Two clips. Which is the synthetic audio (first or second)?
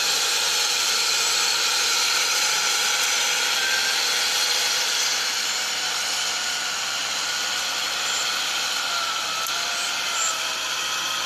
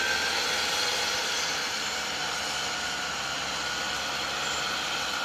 first